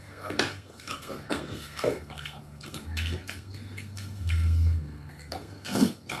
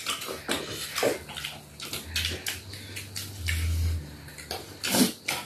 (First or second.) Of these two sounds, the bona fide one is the second